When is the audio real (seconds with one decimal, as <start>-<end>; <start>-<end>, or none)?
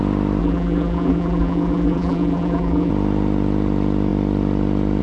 0.0-0.4; 2.9-5.0